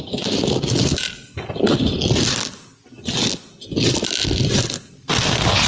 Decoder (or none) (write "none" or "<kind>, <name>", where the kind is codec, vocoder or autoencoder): none